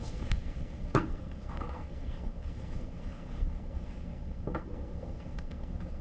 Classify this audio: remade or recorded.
remade